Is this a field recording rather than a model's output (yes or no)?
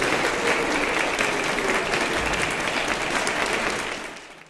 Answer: yes